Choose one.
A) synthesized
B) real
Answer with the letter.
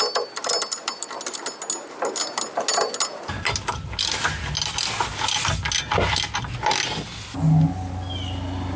B